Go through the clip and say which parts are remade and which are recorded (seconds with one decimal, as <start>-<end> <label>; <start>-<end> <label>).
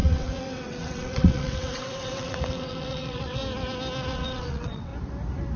0.0-3.4 remade; 3.4-4.1 recorded; 4.1-4.9 remade; 4.9-5.6 recorded